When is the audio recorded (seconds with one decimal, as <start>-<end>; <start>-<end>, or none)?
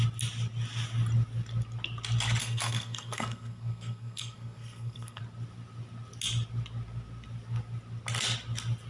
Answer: 0.0-2.4; 5.2-8.9